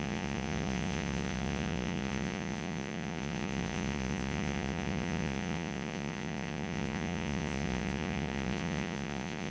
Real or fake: fake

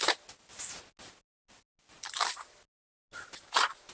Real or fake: real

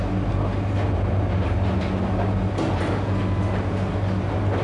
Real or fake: real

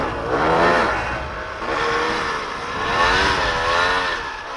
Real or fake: real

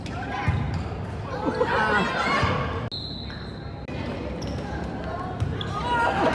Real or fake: real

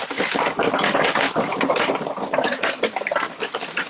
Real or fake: real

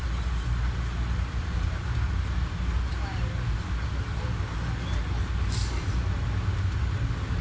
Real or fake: real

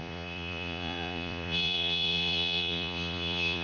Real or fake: fake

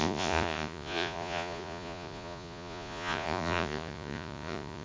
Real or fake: fake